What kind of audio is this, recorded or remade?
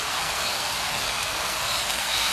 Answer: remade